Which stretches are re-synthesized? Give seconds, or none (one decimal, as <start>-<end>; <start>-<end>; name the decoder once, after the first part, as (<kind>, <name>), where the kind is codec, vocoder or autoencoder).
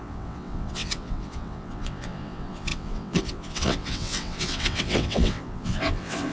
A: 0.0-6.3 (vocoder, WaveNeXt)